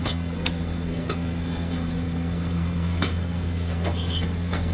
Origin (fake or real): fake